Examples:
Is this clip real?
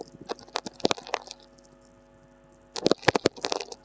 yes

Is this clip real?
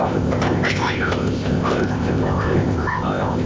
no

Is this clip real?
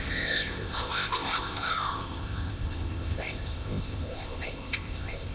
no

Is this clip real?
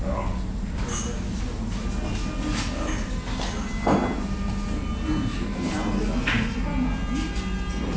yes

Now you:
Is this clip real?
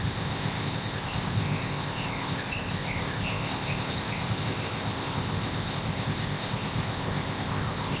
no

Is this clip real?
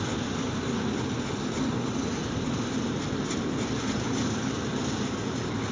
yes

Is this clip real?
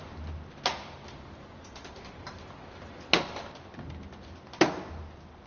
yes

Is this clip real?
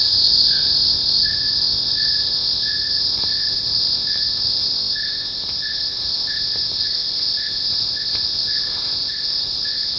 no